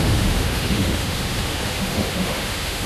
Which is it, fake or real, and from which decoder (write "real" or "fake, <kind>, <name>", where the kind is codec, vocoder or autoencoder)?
fake, autoencoder, DAC-VAE